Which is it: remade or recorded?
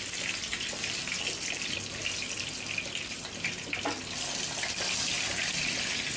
recorded